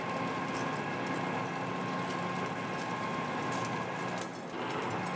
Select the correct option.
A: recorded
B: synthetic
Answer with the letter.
A